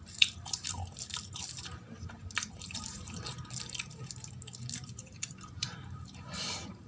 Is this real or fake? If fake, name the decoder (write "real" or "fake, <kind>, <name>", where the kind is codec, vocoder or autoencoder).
fake, vocoder, BigVGAN v2